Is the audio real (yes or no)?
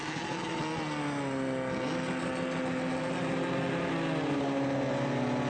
yes